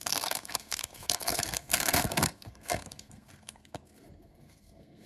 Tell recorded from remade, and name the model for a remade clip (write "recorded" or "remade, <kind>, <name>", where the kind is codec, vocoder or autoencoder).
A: remade, codec, SNAC